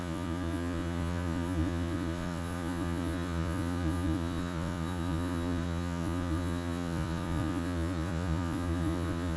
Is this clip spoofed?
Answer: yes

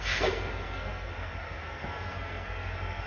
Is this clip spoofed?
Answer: yes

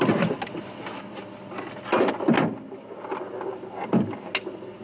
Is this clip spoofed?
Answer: no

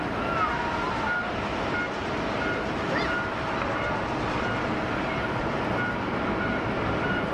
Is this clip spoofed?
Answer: no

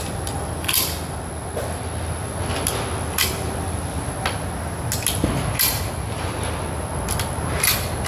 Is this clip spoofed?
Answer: no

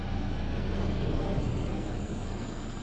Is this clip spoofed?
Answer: yes